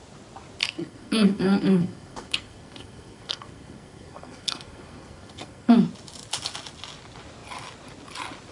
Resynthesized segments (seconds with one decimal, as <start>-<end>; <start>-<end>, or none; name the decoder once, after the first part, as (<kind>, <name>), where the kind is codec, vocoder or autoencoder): 0.6-5.7 (codec, SNAC)